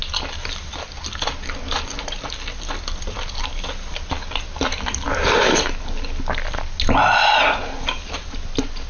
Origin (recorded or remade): recorded